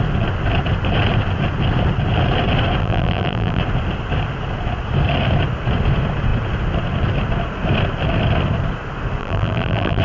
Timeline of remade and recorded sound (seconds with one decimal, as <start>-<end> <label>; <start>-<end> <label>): 0.0-2.8 recorded; 2.8-3.6 remade; 3.6-9.2 recorded; 9.2-10.0 remade

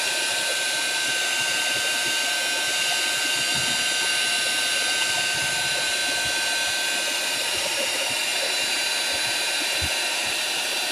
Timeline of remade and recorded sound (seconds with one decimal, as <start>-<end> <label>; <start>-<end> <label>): 0.0-1.1 remade; 1.1-5.5 recorded; 5.5-6.0 remade; 6.0-7.4 recorded; 7.4-10.9 remade

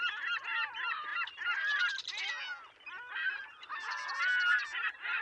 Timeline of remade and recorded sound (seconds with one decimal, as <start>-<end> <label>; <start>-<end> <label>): 0.0-5.2 recorded

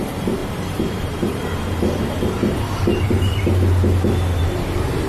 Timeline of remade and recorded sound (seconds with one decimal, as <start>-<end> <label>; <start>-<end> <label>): 0.0-3.5 remade; 3.5-4.4 recorded; 4.4-5.1 remade

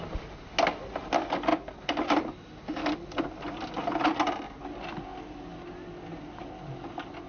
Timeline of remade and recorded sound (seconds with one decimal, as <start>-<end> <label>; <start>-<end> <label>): 0.0-7.3 recorded